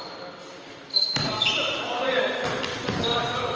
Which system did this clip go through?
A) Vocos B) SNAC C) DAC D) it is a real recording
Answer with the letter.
D